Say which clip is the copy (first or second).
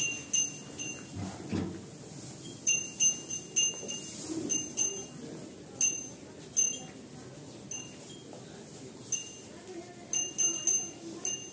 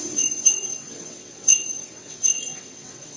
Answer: second